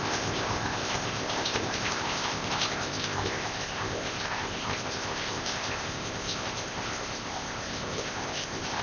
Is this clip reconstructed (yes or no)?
yes